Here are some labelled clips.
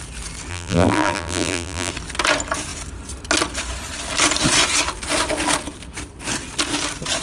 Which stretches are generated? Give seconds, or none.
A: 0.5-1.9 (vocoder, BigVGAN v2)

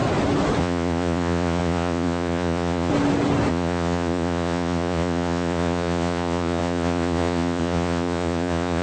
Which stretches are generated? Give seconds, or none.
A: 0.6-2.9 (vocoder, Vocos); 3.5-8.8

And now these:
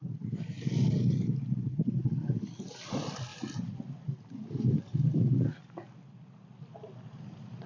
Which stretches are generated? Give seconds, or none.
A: none